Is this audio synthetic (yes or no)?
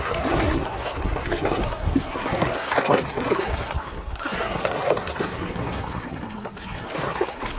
yes